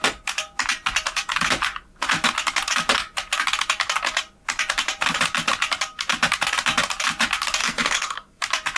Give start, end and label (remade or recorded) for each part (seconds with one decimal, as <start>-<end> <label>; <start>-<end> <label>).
0.0-7.6 recorded; 7.6-8.4 remade; 8.4-8.8 recorded